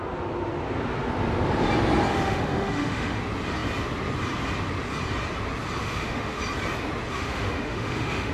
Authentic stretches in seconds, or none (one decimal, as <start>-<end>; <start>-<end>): 0.0-2.1; 3.2-5.8; 6.4-7.1